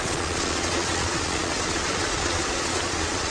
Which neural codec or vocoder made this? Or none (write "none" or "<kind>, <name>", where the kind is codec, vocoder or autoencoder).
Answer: vocoder, Vocos